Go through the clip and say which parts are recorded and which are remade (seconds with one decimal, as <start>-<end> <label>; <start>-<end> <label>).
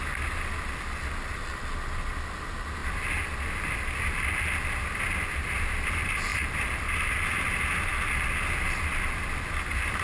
0.0-10.0 recorded